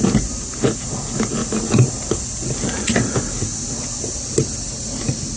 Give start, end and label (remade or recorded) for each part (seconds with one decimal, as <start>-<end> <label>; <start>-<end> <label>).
0.0-1.4 recorded; 1.4-1.9 remade; 1.9-3.5 recorded; 3.5-4.0 remade; 4.0-5.4 recorded